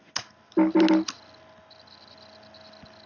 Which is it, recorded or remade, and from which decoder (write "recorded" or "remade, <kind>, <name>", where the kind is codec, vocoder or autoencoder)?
recorded